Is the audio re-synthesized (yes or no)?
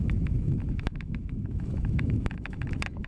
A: yes